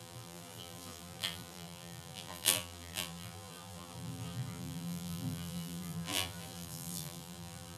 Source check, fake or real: fake